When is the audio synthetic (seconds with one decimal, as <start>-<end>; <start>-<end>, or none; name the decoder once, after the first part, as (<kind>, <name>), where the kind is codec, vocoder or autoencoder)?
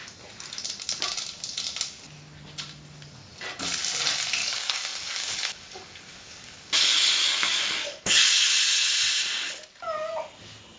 4.4-8.5 (codec, DAC)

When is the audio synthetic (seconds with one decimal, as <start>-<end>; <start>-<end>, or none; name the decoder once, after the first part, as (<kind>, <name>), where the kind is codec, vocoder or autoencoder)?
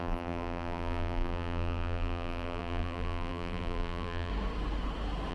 0.0-4.3 (vocoder, BigVGAN v2)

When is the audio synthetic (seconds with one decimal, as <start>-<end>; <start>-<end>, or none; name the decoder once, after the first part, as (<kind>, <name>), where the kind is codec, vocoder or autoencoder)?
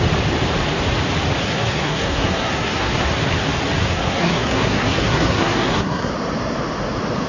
1.4-3.1 (codec, SNAC); 3.8-6.1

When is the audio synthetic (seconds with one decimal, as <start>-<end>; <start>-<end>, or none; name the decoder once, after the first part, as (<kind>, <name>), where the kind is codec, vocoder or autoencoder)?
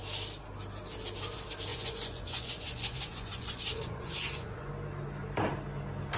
1.7-4.7 (vocoder, Vocos)